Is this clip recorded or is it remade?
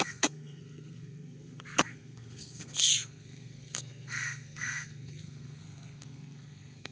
remade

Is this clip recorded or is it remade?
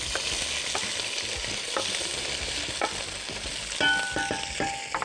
recorded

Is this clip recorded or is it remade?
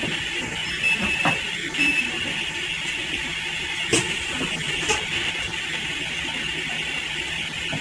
recorded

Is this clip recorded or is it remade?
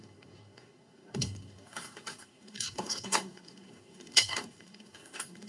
remade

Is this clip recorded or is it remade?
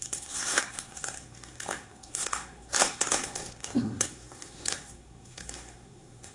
remade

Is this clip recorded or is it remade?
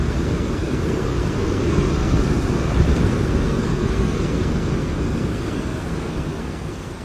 remade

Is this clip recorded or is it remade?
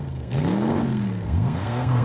remade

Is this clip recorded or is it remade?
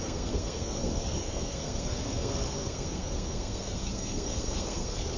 remade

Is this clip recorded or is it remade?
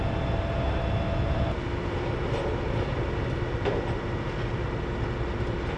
recorded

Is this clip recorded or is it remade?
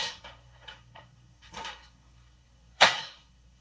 remade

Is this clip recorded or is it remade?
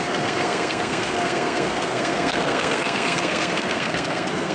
remade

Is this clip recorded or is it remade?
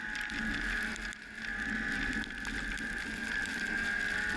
recorded